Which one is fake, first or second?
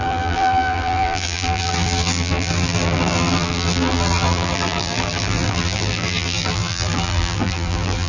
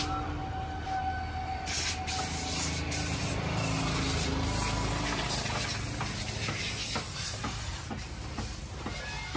first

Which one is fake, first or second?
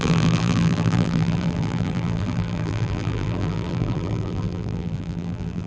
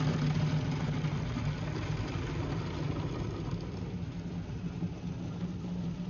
first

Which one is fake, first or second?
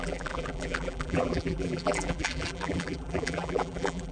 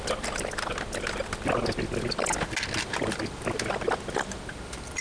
first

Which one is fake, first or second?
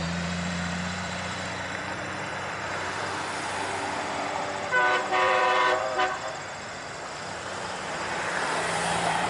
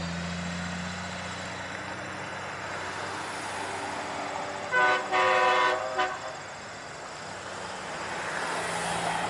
first